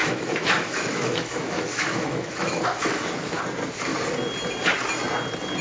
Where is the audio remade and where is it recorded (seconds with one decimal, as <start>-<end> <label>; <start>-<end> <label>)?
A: 0.0-3.4 remade; 3.4-5.6 recorded